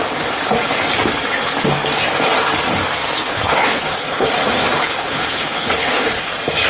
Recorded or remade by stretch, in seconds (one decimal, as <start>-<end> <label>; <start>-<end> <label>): 0.0-3.2 recorded; 3.2-4.3 remade; 4.3-4.8 recorded; 4.8-6.2 remade; 6.2-6.7 recorded